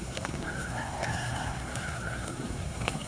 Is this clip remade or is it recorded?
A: remade